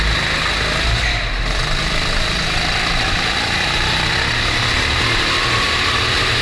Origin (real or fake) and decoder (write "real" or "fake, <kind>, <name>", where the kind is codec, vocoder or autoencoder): real